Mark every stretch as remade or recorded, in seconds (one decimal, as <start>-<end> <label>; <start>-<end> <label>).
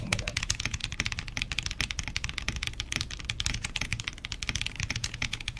0.0-0.8 remade; 0.8-3.5 recorded; 3.5-3.9 remade; 3.9-4.9 recorded; 4.9-5.6 remade